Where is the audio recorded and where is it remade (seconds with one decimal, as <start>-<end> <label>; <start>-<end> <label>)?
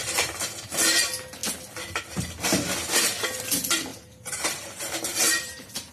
0.0-3.9 recorded; 3.9-5.9 remade